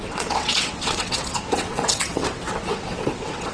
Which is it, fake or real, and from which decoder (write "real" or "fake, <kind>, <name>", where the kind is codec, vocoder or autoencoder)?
fake, vocoder, WaveNeXt